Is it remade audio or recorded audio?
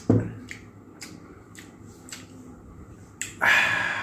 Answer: recorded